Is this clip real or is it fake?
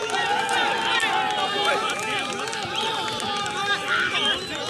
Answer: real